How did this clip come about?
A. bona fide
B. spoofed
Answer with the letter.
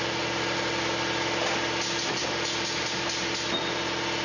A